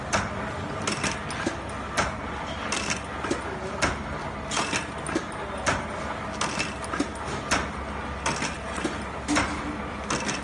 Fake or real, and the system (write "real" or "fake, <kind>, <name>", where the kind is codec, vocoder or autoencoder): real